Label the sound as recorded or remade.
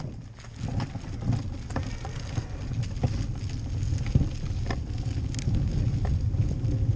recorded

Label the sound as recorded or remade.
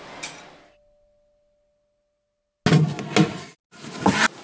recorded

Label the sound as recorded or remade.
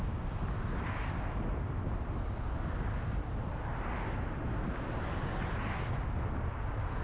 recorded